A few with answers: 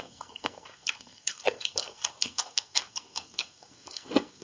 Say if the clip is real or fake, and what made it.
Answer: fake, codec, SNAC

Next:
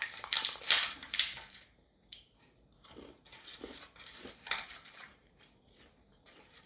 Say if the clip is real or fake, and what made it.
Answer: fake, vocoder, BigVGAN v2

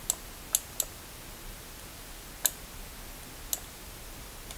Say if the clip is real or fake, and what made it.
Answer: real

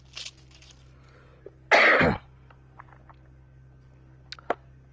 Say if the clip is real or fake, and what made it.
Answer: real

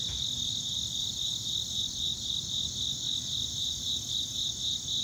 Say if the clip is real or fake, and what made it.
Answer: real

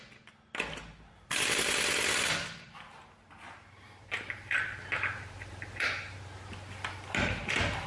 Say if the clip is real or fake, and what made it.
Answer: real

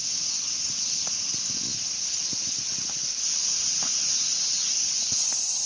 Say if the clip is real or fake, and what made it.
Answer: real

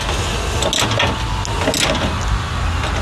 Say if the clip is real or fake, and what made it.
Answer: real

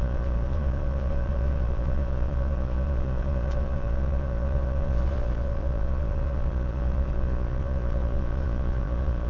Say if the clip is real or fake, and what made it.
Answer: fake, vocoder, Vocos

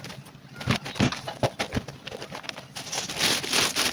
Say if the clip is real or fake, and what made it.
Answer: real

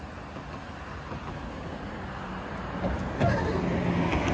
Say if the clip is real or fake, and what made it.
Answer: real